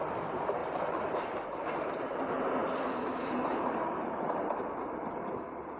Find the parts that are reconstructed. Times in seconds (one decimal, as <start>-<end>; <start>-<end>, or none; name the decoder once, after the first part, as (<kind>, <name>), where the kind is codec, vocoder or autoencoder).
0.0-5.8 (vocoder, BigVGAN v2)